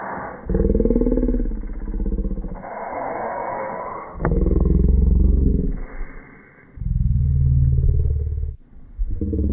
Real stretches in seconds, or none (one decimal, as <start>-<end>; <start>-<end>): 0.0-2.9; 5.5-9.5